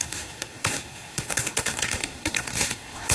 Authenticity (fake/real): fake